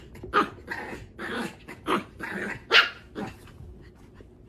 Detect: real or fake real